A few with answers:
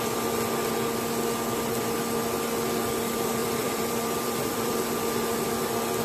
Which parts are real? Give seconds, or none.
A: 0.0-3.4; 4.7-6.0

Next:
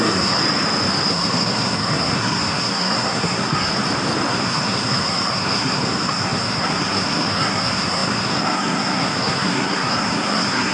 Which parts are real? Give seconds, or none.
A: 0.4-1.1; 3.7-4.3

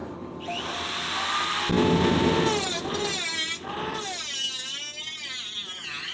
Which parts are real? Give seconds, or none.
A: 0.0-6.1

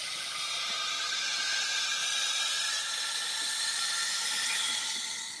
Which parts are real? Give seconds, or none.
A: 0.6-2.0; 3.0-4.7

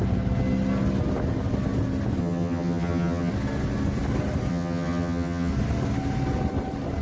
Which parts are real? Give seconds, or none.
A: 0.0-2.2; 3.3-4.5; 5.5-7.0

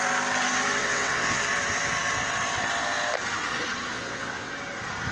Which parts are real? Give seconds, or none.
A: 0.0-0.8; 1.4-3.9; 4.5-5.1

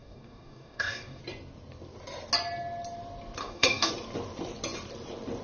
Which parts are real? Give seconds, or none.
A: 1.2-3.4; 3.9-5.4